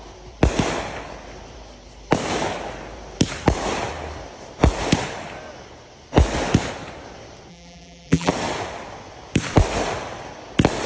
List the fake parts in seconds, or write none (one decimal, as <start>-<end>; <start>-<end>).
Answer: 7.5-8.3